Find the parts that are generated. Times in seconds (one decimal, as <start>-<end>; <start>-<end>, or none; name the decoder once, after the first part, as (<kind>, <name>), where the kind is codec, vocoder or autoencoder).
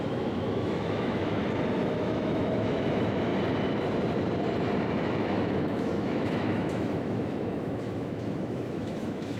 0.0-1.4 (autoencoder, DAC-VAE); 2.0-3.3; 4.9-9.4